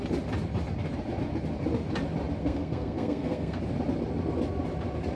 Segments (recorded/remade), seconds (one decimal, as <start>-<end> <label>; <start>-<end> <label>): 0.0-2.4 recorded; 2.4-3.6 remade; 3.6-5.2 recorded